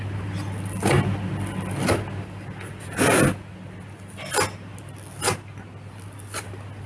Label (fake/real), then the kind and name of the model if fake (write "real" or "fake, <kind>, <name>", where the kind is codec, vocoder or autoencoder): real